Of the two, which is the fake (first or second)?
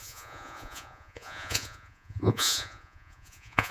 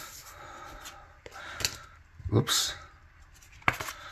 first